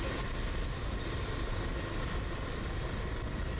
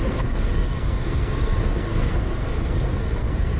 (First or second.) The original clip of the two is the first